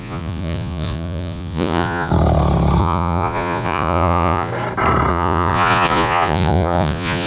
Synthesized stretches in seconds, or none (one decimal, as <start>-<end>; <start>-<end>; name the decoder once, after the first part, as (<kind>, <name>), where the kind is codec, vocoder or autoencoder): 0.0-2.1 (vocoder, Vocos); 2.8-4.5; 5.1-7.3